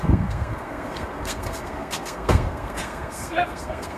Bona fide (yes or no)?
no